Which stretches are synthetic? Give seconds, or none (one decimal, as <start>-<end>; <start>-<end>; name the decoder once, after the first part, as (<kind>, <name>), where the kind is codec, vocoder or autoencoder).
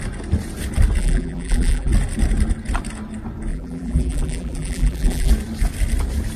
1.0-1.9 (vocoder, BigVGAN v2); 3.5-5.3